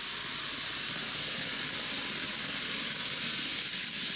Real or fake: real